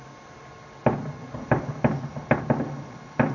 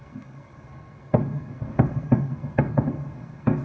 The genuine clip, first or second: first